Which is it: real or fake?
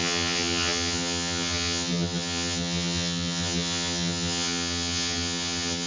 fake